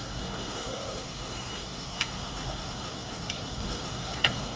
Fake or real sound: fake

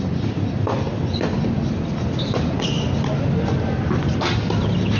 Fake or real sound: real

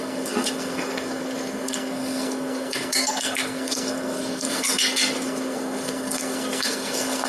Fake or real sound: fake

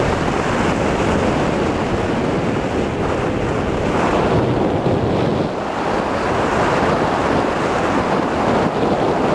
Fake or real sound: real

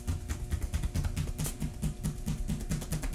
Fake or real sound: real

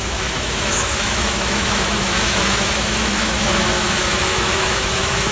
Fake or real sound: fake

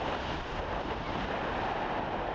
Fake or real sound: real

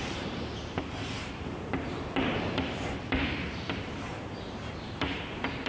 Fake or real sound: fake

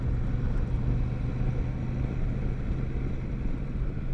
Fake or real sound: real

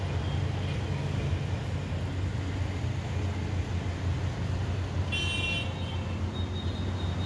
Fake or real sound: real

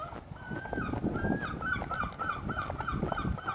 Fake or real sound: real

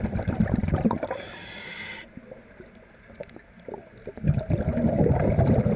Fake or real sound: real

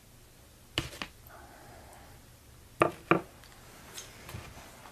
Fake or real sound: real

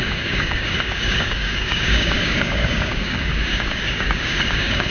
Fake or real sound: fake